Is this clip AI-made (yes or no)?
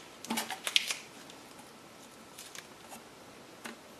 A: no